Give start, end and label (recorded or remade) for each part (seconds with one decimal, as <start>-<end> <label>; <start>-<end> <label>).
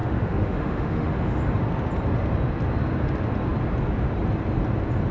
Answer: 0.0-1.4 remade; 1.4-5.1 recorded